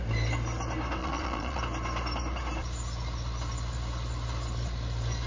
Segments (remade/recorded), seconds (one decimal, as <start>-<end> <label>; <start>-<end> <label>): 0.0-1.0 recorded; 1.0-1.6 remade; 1.6-5.3 recorded